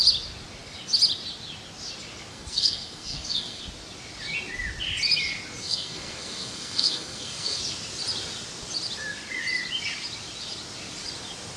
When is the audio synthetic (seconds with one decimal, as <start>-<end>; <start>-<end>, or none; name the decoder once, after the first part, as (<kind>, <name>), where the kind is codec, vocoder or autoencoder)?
2.3-3.6 (codec, SNAC); 5.6-7.6